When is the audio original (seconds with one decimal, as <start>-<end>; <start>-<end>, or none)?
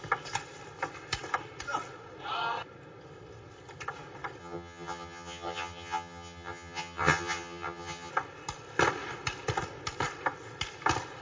0.0-4.4; 8.1-11.2